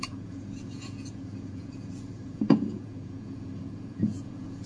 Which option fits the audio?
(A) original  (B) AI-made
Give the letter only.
B